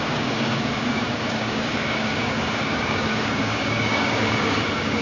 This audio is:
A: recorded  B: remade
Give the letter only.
B